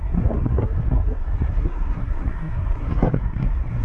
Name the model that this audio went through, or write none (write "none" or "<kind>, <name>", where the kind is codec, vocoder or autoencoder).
codec, SNAC